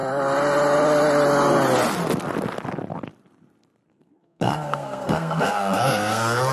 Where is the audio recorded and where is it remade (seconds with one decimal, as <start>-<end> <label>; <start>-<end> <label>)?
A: 0.0-3.9 recorded; 3.9-6.5 remade